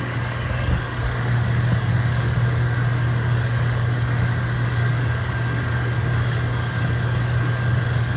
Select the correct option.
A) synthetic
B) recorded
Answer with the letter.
A